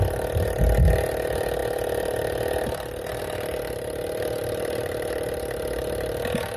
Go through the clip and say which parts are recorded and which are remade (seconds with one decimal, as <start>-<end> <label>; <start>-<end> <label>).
0.0-6.6 recorded